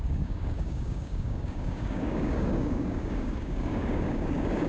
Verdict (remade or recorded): remade